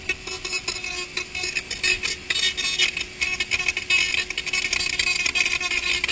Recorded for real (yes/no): yes